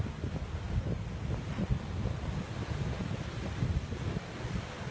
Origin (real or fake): real